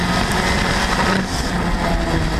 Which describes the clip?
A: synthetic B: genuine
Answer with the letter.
B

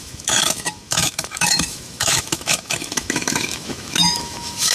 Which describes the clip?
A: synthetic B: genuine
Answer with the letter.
A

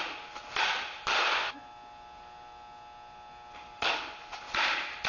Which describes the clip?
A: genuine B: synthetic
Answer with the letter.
A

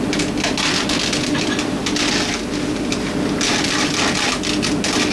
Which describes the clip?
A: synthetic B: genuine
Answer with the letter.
B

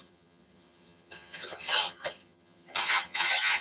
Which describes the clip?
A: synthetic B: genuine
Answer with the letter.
A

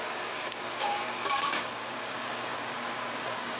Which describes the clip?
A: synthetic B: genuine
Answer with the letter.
A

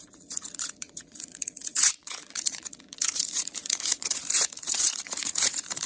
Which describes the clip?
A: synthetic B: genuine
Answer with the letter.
A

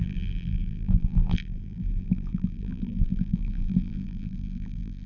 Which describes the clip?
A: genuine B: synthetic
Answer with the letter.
B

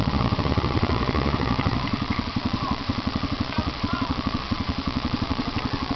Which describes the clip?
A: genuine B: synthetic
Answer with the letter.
B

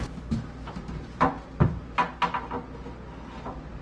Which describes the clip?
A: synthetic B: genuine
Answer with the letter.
B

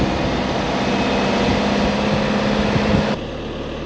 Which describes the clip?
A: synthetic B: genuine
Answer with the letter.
B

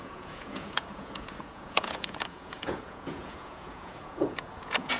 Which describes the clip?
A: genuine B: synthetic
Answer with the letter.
B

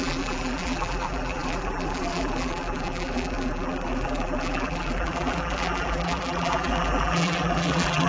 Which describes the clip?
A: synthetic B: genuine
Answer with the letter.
A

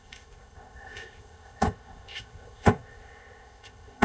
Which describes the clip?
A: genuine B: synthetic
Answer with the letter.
B